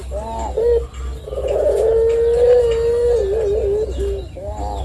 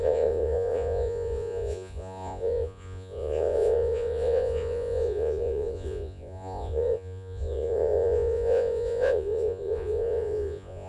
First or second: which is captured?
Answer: first